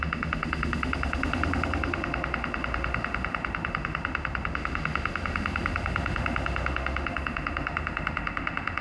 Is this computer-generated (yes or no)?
yes